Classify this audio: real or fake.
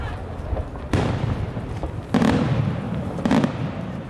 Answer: real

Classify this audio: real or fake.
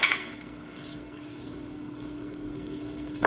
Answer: fake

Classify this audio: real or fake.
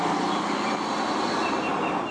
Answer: real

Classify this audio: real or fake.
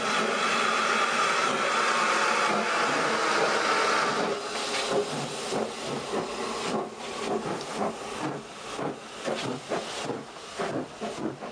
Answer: real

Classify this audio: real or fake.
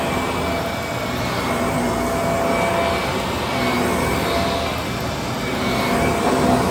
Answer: real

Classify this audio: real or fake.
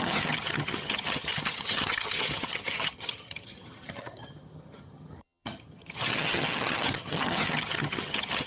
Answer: fake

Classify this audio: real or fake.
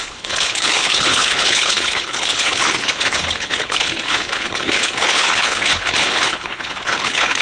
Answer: fake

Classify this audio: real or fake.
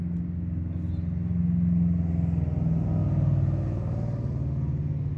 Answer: real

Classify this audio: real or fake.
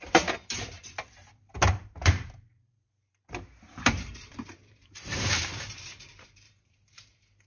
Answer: fake